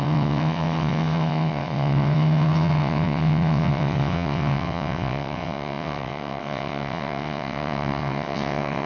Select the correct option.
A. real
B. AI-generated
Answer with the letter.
B